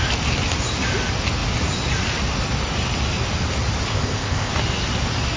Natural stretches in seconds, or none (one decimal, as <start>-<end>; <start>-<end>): 0.0-3.9; 4.5-5.4